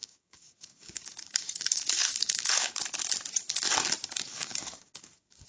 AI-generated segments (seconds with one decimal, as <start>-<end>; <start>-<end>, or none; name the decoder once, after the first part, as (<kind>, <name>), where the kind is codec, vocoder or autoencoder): 0.0-2.7 (codec, DAC); 4.0-5.5